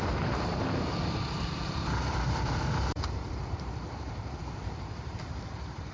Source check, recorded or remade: remade